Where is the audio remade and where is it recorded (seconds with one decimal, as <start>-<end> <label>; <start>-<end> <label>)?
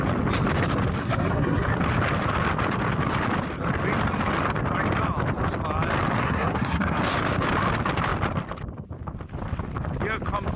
0.0-1.0 recorded; 1.0-1.7 remade; 1.7-6.2 recorded; 6.2-7.0 remade; 7.0-10.6 recorded